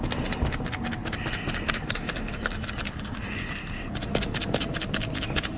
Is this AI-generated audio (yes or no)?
no